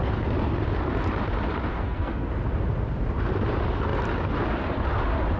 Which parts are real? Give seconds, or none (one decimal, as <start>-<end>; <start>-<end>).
0.0-1.7; 2.3-5.4